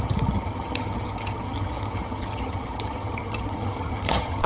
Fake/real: fake